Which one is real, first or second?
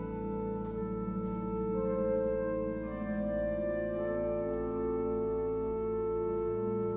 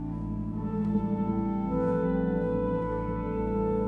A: first